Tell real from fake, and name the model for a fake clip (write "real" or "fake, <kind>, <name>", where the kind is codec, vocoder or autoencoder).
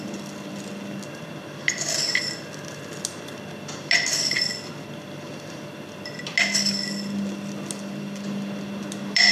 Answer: real